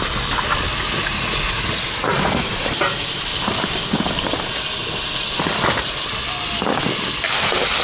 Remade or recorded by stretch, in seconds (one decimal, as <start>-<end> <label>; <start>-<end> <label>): 0.0-0.7 recorded; 0.7-2.6 remade; 2.6-7.8 recorded